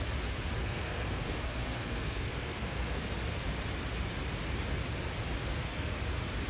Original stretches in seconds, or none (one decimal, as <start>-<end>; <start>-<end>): 0.0-0.6; 3.0-5.4; 5.9-6.5